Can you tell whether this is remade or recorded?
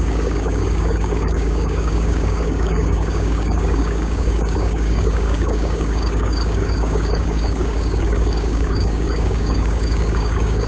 remade